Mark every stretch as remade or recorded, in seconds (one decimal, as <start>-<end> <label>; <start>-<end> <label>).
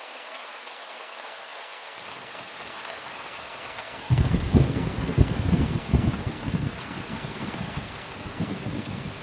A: 0.0-9.2 remade